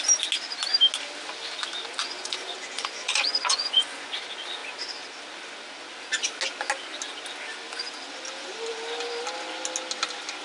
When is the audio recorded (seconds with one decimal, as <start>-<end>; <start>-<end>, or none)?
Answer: 0.0-2.0; 4.1-10.4

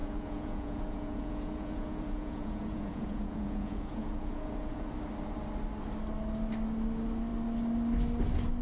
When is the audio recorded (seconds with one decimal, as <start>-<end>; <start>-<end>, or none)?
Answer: 4.9-8.6

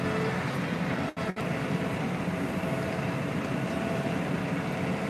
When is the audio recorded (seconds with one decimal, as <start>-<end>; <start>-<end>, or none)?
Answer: 0.0-1.2; 4.3-5.1

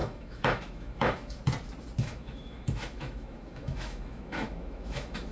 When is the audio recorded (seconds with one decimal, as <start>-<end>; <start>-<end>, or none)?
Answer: 1.4-2.0